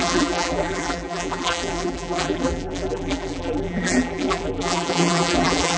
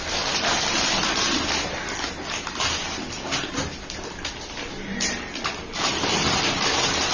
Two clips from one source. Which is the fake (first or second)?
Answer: first